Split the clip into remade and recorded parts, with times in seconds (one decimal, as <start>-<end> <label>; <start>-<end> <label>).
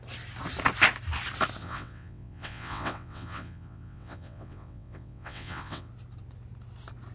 0.0-1.6 recorded; 1.6-5.9 remade; 5.9-7.1 recorded